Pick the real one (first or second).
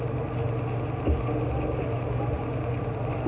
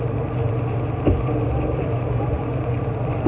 first